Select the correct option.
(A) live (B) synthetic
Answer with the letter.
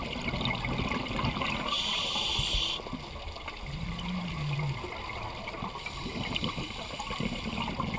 A